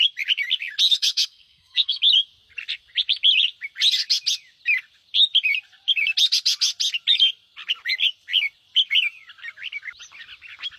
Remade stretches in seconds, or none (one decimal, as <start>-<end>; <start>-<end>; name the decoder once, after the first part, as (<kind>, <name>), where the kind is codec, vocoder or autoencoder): 0.9-2.0 (codec, SNAC)